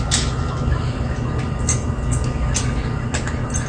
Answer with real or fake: real